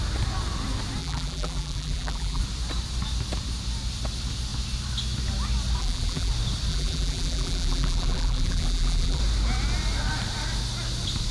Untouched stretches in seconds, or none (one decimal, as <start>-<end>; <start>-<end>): 0.0-1.0; 2.4-5.8; 6.3-6.7; 9.2-11.3